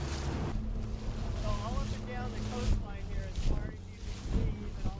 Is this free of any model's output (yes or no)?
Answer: yes